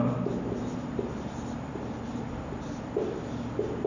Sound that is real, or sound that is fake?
real